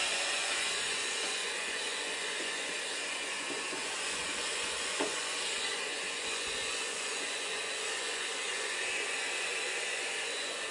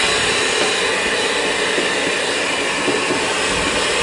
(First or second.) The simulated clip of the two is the first